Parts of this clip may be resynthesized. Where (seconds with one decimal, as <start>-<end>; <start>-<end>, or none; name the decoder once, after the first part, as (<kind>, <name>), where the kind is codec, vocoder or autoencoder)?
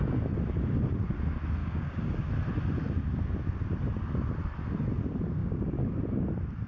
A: 1.6-2.3 (codec, DAC); 5.4-6.0